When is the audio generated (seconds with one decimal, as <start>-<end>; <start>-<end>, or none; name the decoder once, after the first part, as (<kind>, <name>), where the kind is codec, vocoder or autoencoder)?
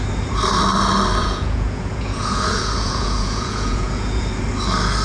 1.2-4.2 (vocoder, Vocos)